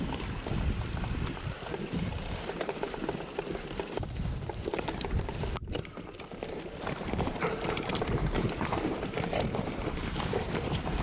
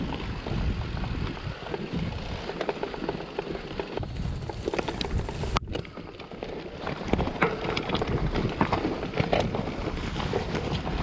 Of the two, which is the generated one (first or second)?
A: first